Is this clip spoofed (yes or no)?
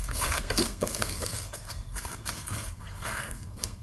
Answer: yes